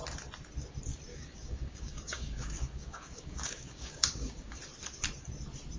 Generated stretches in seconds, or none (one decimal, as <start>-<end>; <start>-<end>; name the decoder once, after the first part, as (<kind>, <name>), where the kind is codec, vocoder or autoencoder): 1.1-4.6 (codec, DAC)